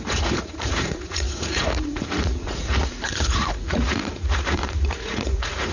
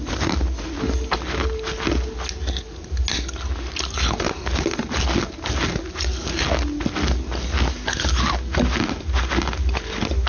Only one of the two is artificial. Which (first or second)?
first